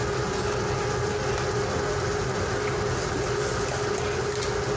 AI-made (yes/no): no